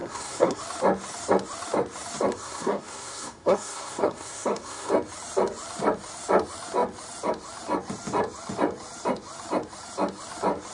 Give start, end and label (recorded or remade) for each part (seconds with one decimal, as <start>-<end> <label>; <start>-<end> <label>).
0.0-0.6 remade; 0.6-2.3 recorded; 2.3-4.9 remade; 4.9-10.7 recorded